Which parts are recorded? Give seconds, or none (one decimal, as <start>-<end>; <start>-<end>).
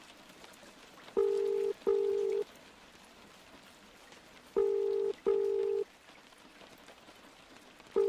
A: 0.0-2.1; 3.8-8.1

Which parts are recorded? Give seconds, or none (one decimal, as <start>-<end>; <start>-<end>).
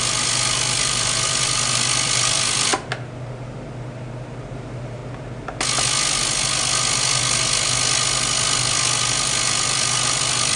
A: 2.7-4.5; 5.0-9.1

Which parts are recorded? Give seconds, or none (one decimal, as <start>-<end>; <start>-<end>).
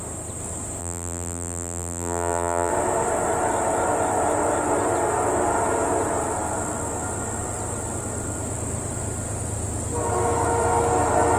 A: 0.0-0.8; 2.7-11.4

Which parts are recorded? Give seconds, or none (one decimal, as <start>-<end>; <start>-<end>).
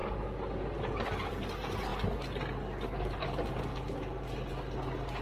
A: 0.0-5.2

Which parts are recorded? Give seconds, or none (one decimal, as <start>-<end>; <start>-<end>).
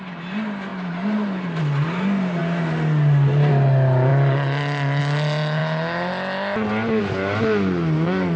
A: 0.0-0.7; 1.6-8.4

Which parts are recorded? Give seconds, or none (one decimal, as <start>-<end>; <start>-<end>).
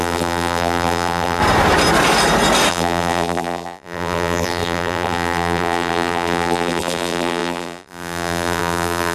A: 1.4-2.7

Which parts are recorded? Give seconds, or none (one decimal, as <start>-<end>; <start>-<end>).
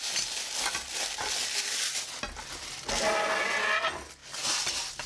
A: 0.0-5.1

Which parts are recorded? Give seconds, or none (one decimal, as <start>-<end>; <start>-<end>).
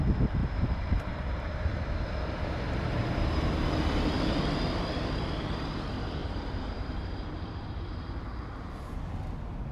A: 0.0-0.4; 2.1-3.0; 3.8-6.2; 8.0-9.7